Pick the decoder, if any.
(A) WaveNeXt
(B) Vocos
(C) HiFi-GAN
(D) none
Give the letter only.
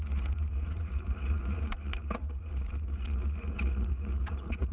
B